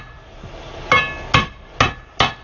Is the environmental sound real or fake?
real